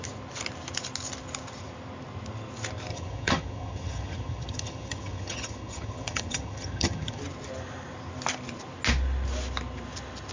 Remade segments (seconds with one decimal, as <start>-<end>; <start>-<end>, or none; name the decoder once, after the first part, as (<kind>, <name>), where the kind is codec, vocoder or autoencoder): 2.9-7.2 (vocoder, HiFi-GAN)